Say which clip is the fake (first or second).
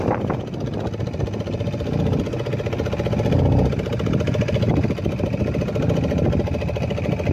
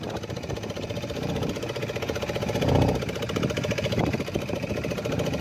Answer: second